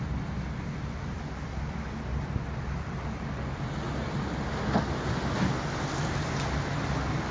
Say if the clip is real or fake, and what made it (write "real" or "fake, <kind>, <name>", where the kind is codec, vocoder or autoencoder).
real